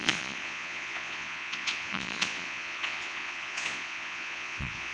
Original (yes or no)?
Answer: no